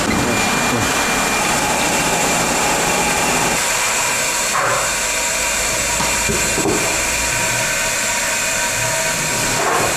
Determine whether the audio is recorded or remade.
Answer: recorded